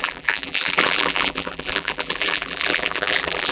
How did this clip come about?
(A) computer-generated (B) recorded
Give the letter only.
A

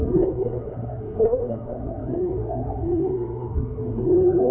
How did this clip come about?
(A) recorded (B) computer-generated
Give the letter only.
B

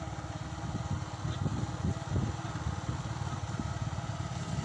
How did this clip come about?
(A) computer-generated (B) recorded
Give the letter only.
B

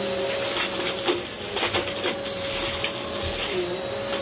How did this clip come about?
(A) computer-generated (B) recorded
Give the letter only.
B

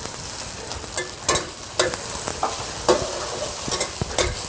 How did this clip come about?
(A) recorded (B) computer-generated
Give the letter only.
A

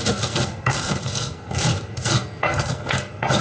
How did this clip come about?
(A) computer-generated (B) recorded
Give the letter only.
A